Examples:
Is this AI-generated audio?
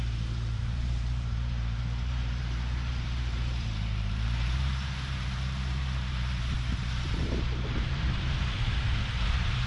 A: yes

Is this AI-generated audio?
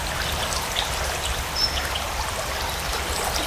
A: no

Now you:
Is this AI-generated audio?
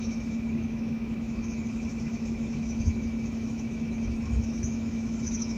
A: yes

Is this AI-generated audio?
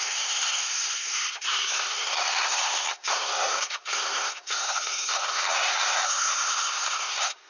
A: yes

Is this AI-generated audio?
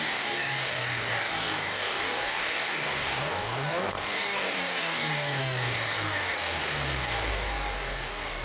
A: yes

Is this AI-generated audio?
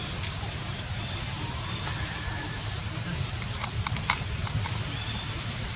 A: yes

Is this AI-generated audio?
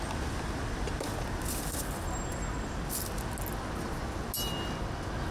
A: no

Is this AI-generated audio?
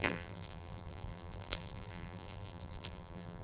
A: yes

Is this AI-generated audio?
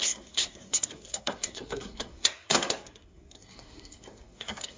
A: yes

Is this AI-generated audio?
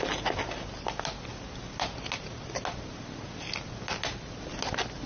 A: no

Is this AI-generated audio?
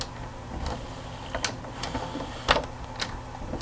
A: no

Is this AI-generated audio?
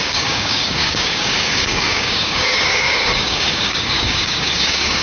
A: yes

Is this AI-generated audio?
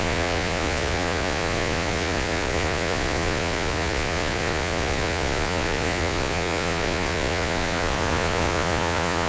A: yes